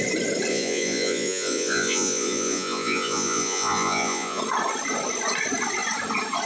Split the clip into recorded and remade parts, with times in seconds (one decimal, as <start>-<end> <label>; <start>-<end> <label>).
0.0-0.5 recorded; 0.5-4.4 remade; 4.4-6.5 recorded